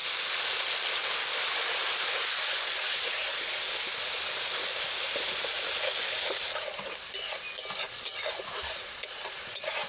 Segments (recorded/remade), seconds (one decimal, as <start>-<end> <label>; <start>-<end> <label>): 0.0-2.9 recorded; 2.9-3.6 remade; 3.6-8.4 recorded; 8.4-9.9 remade